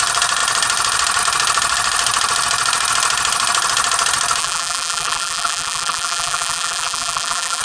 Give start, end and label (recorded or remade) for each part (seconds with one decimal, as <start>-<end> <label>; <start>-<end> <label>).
0.0-4.4 recorded; 4.4-7.6 remade